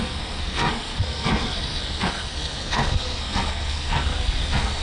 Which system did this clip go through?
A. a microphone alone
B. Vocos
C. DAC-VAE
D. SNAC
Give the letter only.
D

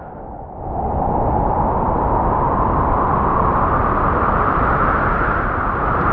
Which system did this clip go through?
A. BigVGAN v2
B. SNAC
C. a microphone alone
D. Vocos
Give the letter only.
C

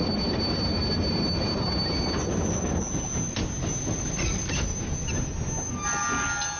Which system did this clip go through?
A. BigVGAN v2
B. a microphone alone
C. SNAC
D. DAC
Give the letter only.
B